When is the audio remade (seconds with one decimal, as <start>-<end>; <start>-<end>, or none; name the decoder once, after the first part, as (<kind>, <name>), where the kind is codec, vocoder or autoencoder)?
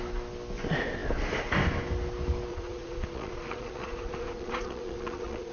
2.5-5.5 (vocoder, Vocos)